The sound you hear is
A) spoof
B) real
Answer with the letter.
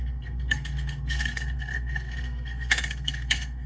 A